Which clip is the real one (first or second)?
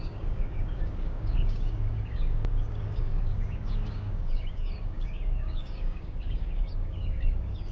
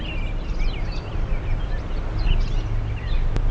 second